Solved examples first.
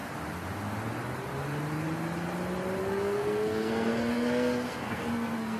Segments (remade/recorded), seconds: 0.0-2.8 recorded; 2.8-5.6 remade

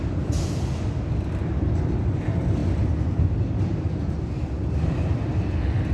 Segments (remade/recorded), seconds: 0.0-5.9 recorded